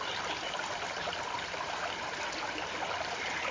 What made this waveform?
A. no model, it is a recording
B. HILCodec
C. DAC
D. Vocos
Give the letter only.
A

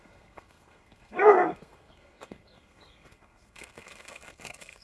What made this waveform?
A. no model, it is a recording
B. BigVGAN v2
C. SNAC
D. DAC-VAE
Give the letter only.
C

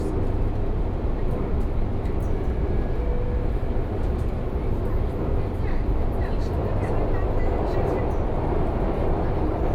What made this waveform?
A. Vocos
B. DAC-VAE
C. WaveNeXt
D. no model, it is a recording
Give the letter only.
D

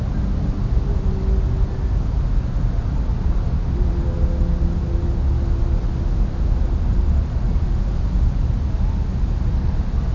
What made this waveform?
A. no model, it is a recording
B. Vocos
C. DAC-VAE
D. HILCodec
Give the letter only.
A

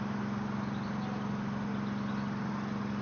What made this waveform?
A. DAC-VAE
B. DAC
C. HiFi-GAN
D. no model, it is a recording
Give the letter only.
D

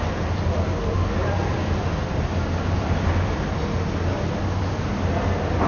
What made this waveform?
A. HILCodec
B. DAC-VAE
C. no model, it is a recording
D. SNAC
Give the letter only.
C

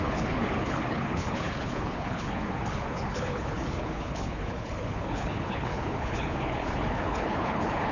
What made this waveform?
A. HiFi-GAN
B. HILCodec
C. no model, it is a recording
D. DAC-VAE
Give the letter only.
B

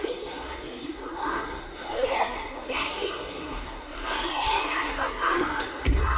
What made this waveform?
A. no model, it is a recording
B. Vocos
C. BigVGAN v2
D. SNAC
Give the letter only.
D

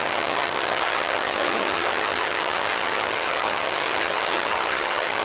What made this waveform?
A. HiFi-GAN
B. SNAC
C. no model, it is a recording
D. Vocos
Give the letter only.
A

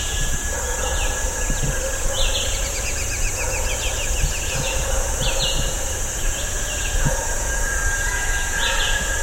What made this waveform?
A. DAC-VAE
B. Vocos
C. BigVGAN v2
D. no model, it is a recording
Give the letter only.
B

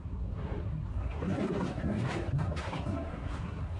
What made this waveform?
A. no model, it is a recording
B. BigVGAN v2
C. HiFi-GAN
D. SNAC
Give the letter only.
D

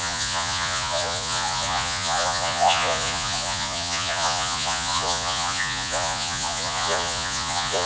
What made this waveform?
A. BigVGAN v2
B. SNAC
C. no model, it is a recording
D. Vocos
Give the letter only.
D